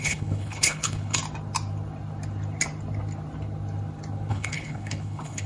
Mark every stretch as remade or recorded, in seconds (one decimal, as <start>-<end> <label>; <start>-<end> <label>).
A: 0.0-1.2 remade; 1.2-4.3 recorded; 4.3-5.5 remade